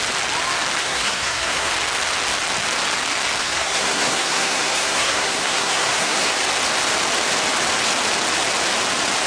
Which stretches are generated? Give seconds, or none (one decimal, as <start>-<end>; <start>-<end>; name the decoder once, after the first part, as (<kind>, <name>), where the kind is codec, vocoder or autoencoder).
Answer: 0.8-1.7 (codec, SNAC); 3.4-6.3